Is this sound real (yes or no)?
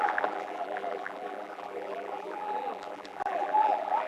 no